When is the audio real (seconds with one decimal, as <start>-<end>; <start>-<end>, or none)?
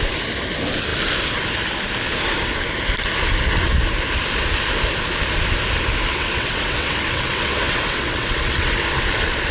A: 0.0-6.1; 9.0-9.5